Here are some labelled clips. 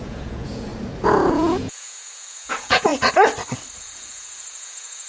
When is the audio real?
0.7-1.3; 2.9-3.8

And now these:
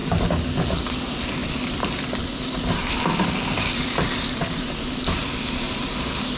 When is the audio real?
0.0-1.4; 4.6-6.4

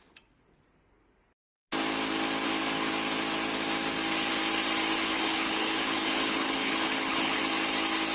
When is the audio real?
0.0-5.0; 7.4-8.1

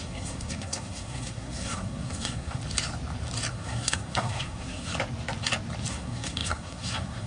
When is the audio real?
2.6-3.5; 4.9-5.9

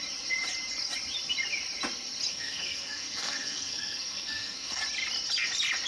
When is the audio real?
0.0-2.3; 4.8-5.9

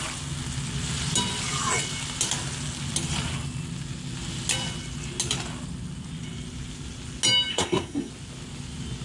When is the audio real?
0.0-7.5; 8.1-9.0